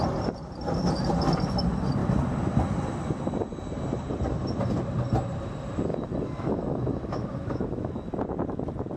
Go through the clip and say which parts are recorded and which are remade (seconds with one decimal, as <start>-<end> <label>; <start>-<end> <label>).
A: 0.0-5.9 recorded; 5.9-8.1 remade; 8.1-9.0 recorded